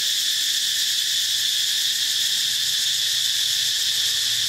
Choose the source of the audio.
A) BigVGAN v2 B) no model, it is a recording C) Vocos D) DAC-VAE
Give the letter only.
B